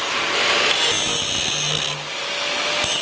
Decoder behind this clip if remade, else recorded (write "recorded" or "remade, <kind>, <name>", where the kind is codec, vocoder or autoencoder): recorded